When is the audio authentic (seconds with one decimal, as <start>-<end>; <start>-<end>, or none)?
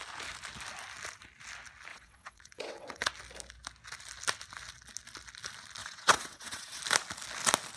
0.0-1.9; 3.1-5.8; 6.8-7.8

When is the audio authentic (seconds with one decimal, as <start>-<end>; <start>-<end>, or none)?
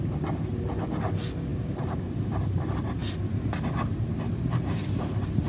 0.0-1.5; 2.6-5.5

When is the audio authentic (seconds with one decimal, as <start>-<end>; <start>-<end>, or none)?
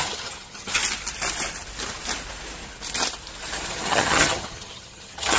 0.8-3.7